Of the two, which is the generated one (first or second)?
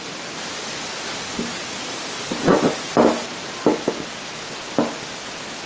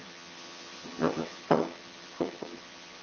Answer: second